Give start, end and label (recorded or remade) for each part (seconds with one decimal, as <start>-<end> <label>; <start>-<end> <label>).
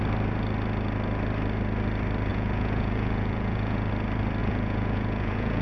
0.0-2.3 recorded; 2.3-3.9 remade; 3.9-4.4 recorded; 4.4-5.6 remade